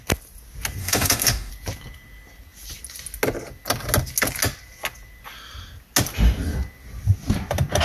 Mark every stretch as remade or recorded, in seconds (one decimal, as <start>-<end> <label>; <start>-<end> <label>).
0.0-0.8 recorded; 0.8-1.5 remade; 1.5-7.8 recorded